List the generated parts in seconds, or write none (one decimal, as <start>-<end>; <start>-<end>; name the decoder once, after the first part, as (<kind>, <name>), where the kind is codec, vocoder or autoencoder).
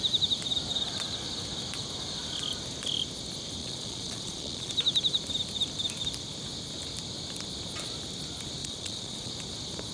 3.6-4.7 (vocoder, Vocos); 8.6-9.3